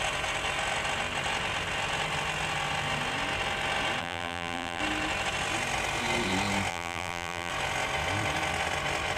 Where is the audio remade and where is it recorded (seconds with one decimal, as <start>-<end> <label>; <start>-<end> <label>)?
0.0-4.0 recorded; 4.0-4.8 remade; 4.8-6.7 recorded; 6.7-7.5 remade; 7.5-9.2 recorded